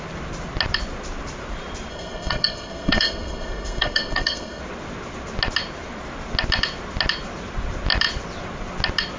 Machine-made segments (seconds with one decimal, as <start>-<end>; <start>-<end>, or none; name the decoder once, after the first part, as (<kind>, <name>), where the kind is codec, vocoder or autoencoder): 1.9-4.6 (codec, SNAC)